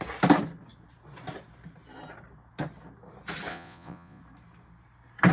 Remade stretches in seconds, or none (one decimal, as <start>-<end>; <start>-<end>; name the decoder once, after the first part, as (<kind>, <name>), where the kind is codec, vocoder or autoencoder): 3.5-4.2 (vocoder, Vocos)